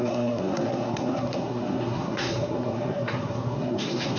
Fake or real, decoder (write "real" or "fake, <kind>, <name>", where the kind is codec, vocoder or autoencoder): fake, codec, SNAC